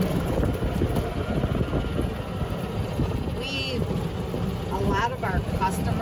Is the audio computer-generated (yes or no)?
no